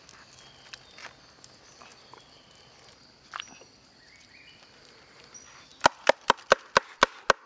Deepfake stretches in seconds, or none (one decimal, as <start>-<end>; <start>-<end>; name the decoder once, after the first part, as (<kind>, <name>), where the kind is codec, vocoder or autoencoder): none